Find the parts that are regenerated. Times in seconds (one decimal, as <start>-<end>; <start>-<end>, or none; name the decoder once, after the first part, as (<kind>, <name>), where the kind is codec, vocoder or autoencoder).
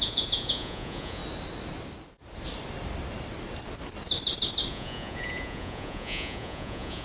0.0-1.2 (vocoder, Vocos); 4.7-7.0